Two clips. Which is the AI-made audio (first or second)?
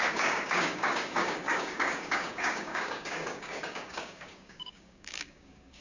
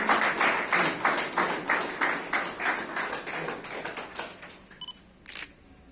first